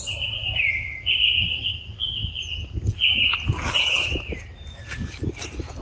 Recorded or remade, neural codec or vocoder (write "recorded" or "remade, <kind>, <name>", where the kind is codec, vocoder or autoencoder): recorded